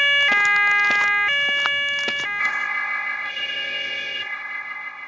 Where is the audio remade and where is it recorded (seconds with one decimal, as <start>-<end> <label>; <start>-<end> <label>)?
0.0-2.4 recorded; 2.4-5.1 remade